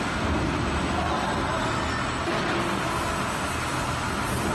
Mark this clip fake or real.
real